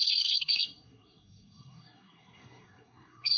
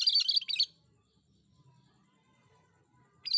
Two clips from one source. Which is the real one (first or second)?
second